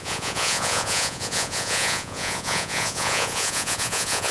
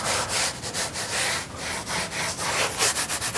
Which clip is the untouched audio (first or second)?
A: second